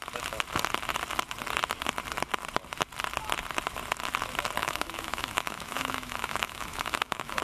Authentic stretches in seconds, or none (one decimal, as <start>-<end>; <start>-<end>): 0.0-4.6